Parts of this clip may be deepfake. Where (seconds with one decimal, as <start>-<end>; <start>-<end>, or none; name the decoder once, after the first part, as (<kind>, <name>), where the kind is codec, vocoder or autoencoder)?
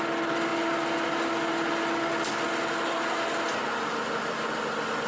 none